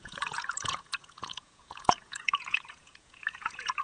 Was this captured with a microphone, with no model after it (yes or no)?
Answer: no